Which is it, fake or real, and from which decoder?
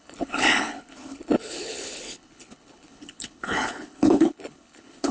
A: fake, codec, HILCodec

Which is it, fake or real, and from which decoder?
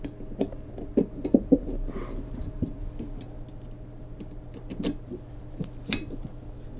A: real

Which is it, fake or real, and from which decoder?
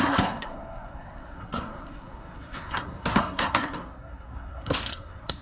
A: fake, codec, SNAC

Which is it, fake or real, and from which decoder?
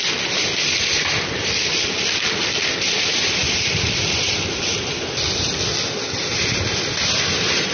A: real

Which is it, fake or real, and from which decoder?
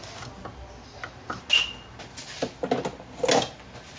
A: real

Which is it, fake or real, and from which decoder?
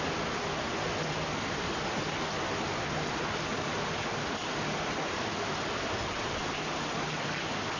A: real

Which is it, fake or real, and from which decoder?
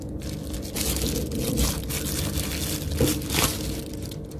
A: real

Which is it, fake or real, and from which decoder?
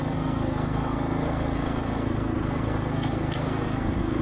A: fake, codec, SNAC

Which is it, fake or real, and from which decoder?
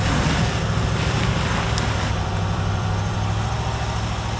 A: fake, vocoder, BigVGAN v2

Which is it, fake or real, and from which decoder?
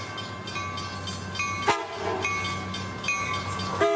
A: real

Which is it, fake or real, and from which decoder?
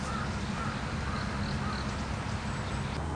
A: real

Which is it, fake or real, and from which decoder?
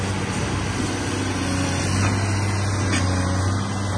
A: real